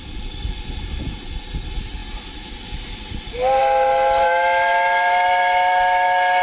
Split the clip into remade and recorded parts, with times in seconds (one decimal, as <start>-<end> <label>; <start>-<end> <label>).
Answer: 0.0-6.4 recorded